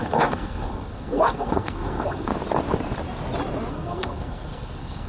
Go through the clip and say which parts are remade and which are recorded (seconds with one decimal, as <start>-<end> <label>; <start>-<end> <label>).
0.0-2.3 remade; 2.3-3.7 recorded; 3.7-5.1 remade